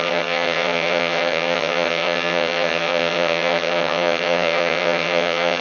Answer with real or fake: fake